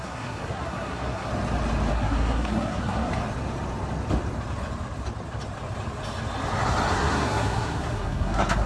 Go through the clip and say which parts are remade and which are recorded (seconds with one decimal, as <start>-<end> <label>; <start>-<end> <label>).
0.0-1.3 remade; 1.3-1.9 recorded; 1.9-3.1 remade; 3.1-6.9 recorded; 6.9-8.7 remade